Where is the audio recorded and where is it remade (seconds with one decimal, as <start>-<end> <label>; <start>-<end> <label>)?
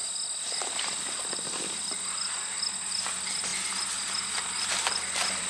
0.0-0.6 recorded; 0.6-3.5 remade; 3.5-4.7 recorded; 4.7-5.5 remade